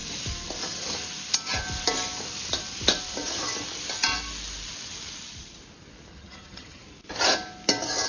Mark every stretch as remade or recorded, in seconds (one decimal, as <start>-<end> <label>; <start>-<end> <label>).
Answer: 0.0-6.1 recorded; 6.1-6.8 remade; 6.8-8.1 recorded